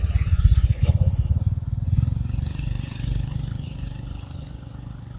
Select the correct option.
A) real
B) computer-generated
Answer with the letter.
B